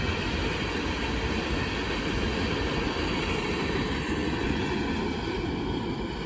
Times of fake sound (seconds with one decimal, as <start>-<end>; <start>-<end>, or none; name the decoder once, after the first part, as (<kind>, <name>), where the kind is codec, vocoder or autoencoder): 4.2-4.9 (vocoder, Vocos)